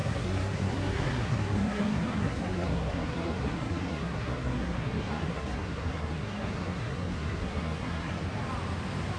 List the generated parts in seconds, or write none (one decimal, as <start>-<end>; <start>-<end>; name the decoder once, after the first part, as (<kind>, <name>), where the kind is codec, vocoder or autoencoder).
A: 0.0-8.2 (codec, SNAC)